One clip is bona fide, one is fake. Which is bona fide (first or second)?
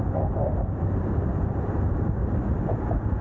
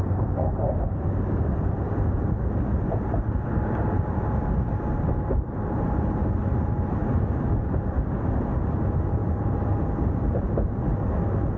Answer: second